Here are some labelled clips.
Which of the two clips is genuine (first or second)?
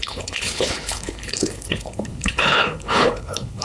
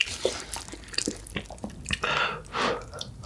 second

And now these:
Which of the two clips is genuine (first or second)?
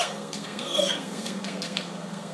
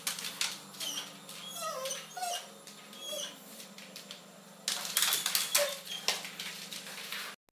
second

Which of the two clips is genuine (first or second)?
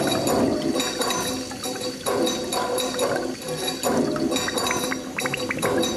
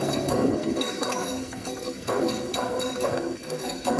first